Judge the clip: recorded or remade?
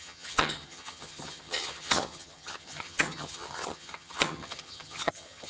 remade